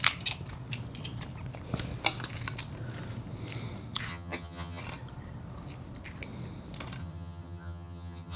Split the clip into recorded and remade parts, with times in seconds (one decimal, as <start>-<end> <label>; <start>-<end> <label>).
0.0-4.1 recorded; 4.1-4.8 remade; 4.8-7.0 recorded; 7.0-8.4 remade